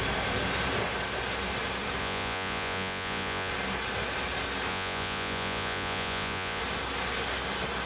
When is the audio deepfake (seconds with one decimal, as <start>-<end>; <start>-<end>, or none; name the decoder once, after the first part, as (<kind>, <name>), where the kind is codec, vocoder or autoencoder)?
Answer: 2.0-3.5 (vocoder, Vocos); 4.7-6.6